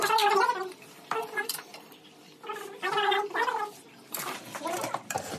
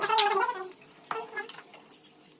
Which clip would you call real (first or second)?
second